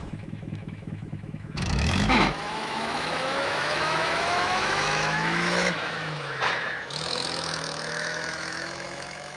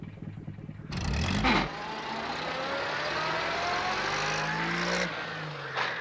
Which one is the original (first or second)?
second